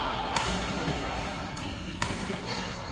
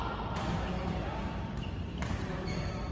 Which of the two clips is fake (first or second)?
first